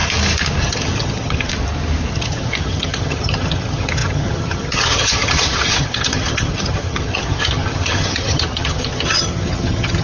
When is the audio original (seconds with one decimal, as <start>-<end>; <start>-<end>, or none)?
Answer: 0.0-0.6; 1.5-2.1